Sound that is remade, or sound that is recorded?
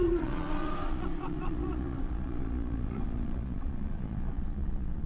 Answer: remade